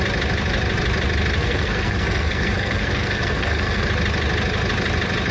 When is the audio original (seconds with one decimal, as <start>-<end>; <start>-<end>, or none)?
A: 0.0-1.4; 3.9-5.3